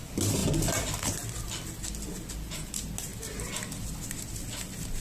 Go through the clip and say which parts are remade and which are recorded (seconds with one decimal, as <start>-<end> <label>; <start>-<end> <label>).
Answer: 0.0-5.0 recorded